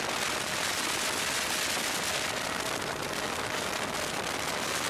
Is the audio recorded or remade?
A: recorded